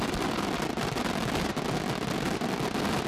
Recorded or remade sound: recorded